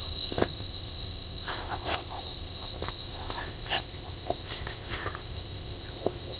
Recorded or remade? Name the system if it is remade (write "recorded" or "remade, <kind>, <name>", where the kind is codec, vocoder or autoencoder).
remade, codec, ZipCodec